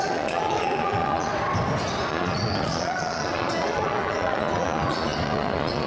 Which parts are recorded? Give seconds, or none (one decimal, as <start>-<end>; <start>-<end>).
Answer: 1.3-2.1